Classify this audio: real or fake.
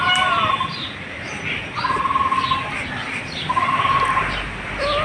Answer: fake